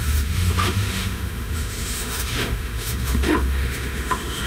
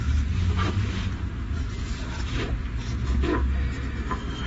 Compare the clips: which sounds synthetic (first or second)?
first